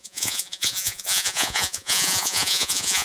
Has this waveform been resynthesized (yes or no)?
yes